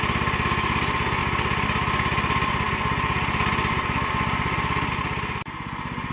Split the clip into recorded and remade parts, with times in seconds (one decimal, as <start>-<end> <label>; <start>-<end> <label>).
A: 0.0-6.1 recorded